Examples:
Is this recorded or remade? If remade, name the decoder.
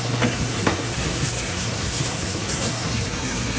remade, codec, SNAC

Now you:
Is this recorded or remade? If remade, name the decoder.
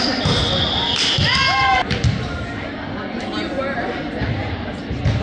recorded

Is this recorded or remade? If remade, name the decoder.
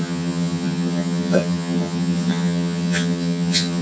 remade, vocoder, HiFi-GAN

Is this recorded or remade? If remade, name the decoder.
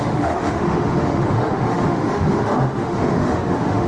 remade, autoencoder, DAC-VAE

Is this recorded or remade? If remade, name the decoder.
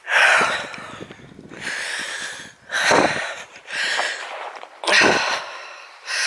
recorded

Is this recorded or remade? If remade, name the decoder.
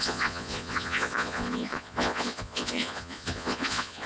remade, vocoder, Vocos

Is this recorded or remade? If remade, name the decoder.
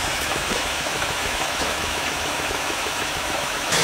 remade, autoencoder, DAC-VAE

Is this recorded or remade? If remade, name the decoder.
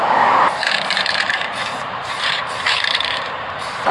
remade, vocoder, BigVGAN v2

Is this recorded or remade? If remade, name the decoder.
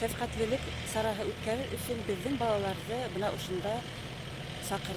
recorded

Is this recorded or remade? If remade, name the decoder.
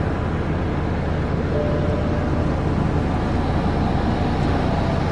recorded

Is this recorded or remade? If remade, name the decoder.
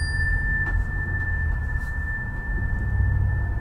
recorded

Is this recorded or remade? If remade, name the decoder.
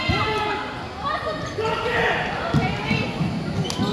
recorded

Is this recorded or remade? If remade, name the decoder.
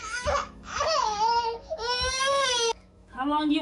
remade, autoencoder, DAC-VAE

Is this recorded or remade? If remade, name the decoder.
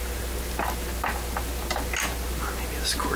recorded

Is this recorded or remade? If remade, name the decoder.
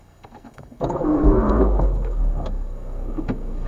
remade, codec, SNAC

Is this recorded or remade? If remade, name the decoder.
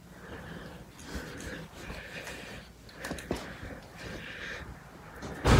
recorded